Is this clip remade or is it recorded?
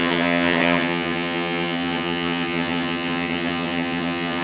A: remade